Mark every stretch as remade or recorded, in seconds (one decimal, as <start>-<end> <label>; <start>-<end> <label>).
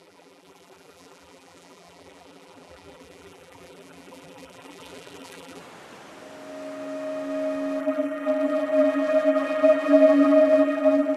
0.0-5.6 remade; 5.6-7.8 recorded; 7.8-11.2 remade